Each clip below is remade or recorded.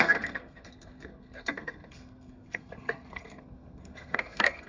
remade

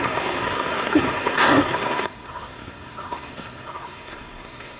remade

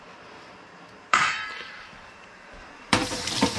remade